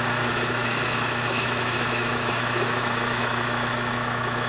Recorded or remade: remade